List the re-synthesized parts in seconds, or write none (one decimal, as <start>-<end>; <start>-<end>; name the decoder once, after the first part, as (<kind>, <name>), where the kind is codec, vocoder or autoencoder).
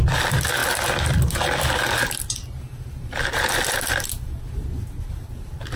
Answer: none